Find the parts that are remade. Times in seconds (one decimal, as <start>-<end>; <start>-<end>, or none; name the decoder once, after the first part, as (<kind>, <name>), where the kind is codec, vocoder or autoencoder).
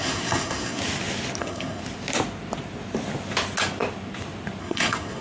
0.0-0.8 (codec, SNAC); 1.4-1.8; 4.6-5.2